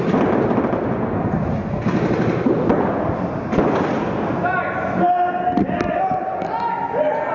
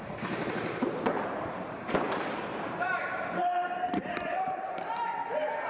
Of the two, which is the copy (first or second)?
second